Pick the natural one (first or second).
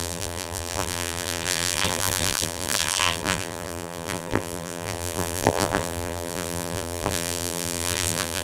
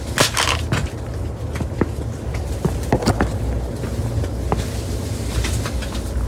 second